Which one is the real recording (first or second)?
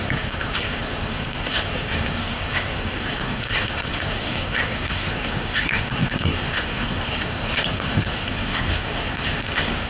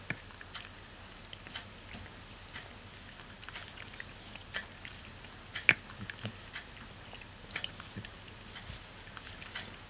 second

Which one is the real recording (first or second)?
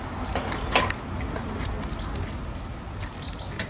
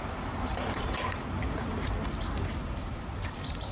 first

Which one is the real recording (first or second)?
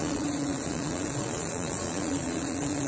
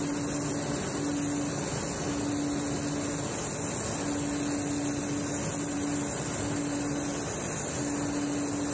second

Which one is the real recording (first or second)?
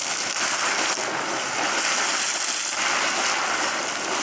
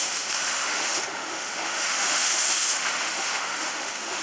first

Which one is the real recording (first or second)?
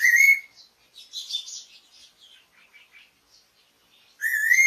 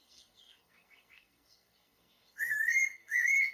first